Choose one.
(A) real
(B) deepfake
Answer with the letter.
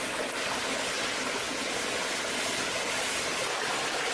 A